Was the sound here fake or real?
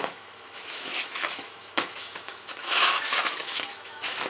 fake